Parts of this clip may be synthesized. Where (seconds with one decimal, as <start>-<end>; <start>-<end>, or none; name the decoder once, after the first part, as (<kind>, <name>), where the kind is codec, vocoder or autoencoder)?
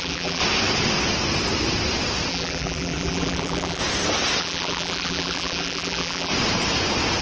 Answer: 0.0-0.4 (vocoder, BigVGAN v2); 2.3-3.8; 4.4-6.3